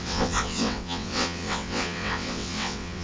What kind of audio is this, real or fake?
fake